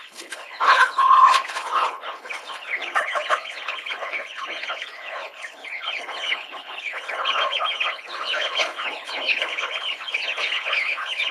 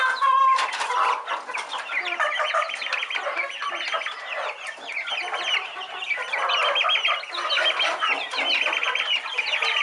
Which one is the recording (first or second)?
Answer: second